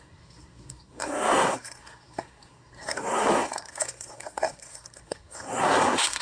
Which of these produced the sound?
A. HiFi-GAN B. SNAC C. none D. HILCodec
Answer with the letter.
B